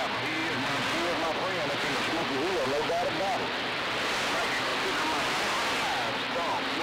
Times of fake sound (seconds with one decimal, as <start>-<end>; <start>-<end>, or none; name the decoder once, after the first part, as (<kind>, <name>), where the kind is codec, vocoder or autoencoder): none